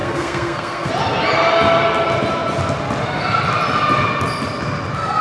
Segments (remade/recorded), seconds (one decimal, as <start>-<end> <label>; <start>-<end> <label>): 0.0-0.9 remade; 0.9-5.2 recorded